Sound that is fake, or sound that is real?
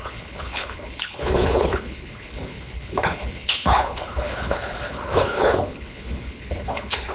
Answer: fake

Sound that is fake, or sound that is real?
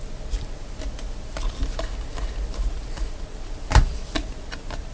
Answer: real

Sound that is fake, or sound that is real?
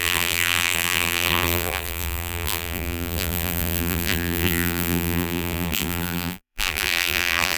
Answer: fake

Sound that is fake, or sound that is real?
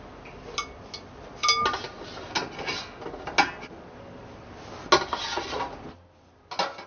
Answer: real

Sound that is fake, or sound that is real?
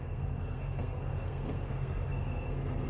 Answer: fake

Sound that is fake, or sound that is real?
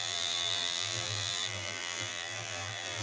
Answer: fake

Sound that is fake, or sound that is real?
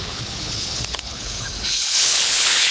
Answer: fake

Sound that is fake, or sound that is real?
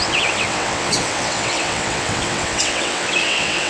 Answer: fake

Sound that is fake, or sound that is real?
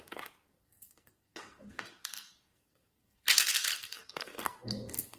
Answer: fake